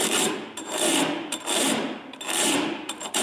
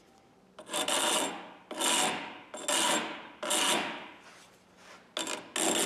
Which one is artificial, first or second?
first